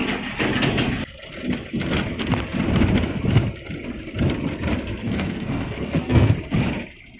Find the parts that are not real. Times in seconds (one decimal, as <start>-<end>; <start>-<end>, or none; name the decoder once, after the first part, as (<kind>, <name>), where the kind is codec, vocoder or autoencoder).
5.0-6.3 (codec, SNAC)